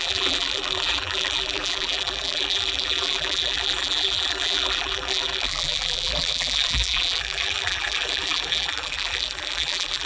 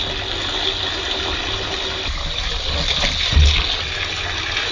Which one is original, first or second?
second